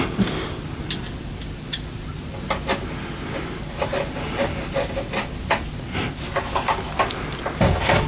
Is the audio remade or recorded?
recorded